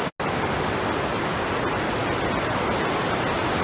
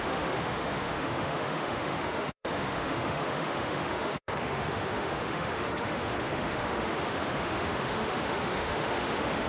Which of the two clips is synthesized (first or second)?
second